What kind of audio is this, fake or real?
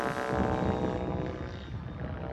real